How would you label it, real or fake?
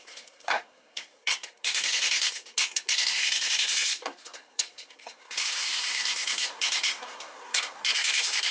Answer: fake